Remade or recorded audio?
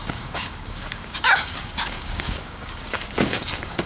remade